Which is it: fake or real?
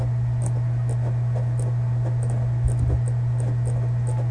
real